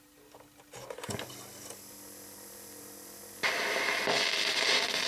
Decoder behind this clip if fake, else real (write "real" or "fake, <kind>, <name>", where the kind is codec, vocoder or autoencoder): real